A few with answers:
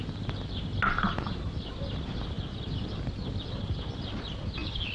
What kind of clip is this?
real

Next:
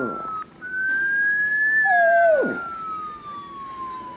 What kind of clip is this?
real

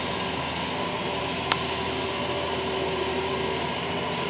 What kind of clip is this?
real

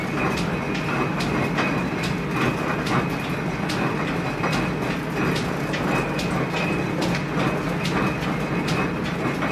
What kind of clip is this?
real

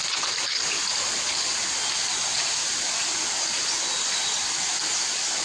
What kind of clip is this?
real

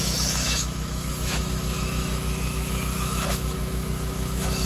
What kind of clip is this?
fake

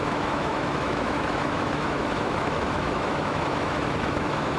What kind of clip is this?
fake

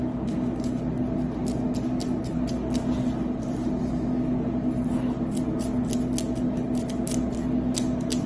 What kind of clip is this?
real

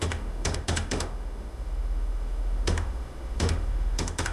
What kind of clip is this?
fake